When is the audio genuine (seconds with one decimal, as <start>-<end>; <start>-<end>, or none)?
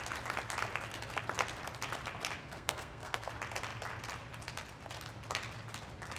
0.0-2.4; 3.3-6.2